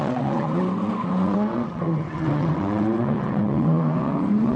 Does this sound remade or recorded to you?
remade